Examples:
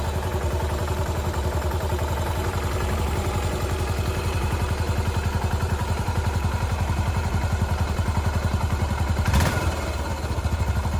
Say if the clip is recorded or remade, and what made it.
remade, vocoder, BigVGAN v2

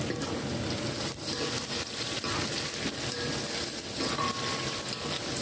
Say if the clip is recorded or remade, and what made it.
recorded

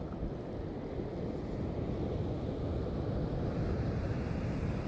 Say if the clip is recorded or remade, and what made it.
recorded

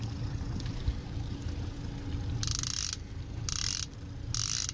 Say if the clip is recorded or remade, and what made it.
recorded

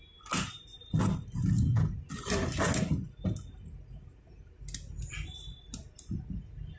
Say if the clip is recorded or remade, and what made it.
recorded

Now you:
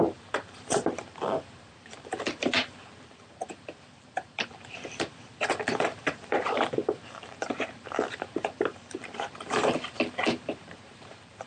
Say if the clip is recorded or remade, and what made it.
remade, vocoder, BigVGAN v2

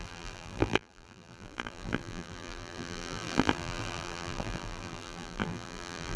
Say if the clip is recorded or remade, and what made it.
remade, vocoder, BigVGAN v2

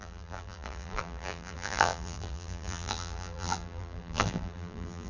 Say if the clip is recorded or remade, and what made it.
remade, vocoder, BigVGAN v2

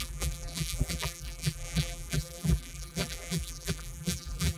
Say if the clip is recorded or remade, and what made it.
remade, vocoder, BigVGAN v2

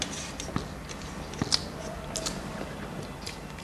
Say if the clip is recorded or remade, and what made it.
remade, vocoder, BigVGAN v2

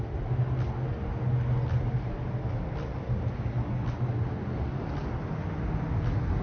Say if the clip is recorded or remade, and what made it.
recorded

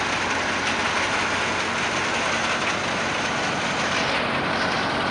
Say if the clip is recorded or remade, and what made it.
recorded